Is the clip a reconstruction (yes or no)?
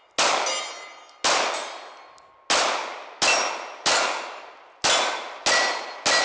no